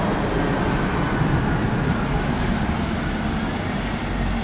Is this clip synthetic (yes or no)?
no